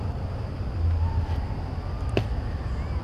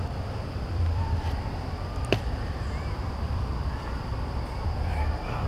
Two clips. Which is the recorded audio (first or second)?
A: first